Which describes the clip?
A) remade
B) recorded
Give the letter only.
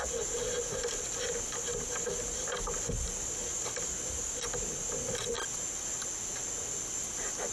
B